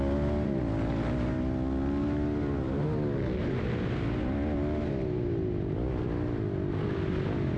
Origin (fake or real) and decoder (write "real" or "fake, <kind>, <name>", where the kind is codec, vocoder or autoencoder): real